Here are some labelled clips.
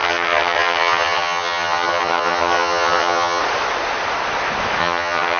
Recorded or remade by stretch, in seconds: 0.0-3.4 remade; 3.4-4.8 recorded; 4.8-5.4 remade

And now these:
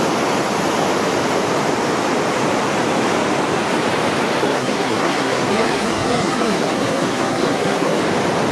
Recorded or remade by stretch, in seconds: 0.0-4.4 recorded; 4.4-8.0 remade; 8.0-8.5 recorded